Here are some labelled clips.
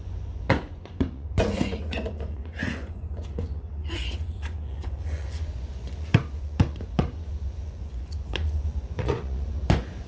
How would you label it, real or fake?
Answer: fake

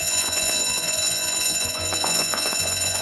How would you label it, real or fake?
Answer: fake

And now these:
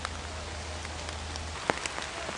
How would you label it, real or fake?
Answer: real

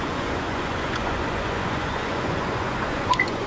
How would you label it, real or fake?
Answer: fake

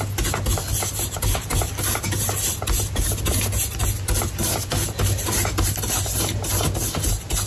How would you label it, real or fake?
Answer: real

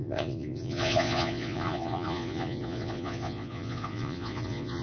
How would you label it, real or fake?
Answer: fake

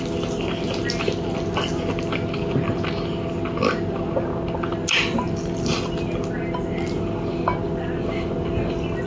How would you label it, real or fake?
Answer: real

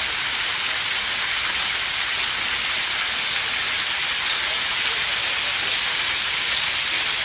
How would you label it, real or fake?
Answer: real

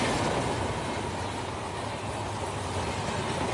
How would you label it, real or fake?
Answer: real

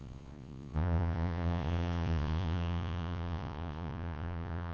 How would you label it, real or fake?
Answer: fake